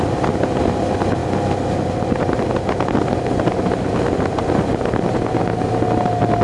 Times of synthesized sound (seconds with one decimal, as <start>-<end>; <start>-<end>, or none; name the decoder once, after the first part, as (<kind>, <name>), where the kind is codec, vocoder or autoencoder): none